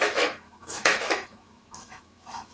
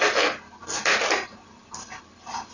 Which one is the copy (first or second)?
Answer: first